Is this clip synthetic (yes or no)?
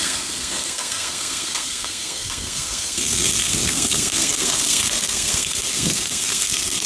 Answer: yes